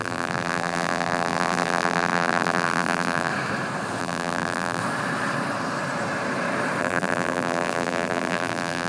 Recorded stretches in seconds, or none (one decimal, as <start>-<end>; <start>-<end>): 3.3-4.0; 4.8-6.8